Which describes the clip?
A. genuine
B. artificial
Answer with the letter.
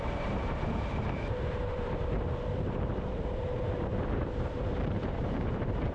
B